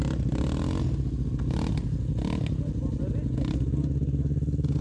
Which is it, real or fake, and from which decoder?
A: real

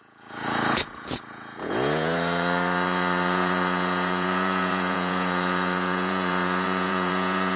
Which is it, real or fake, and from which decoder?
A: fake, vocoder, Vocos